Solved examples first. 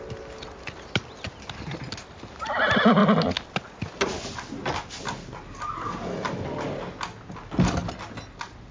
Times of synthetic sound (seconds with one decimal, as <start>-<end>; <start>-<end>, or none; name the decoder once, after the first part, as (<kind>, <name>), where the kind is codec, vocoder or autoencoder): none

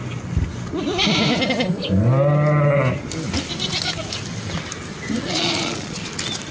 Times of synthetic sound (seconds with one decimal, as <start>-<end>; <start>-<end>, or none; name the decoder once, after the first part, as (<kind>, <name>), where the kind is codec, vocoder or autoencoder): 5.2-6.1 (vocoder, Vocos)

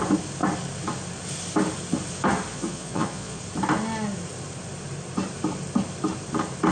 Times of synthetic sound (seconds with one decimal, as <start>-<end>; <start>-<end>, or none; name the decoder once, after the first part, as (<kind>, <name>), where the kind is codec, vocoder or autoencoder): 2.5-3.4 (vocoder, Vocos)